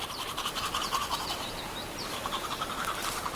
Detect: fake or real fake